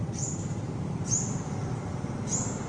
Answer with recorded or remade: recorded